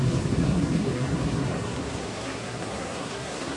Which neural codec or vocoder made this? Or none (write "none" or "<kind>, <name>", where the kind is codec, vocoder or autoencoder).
codec, SNAC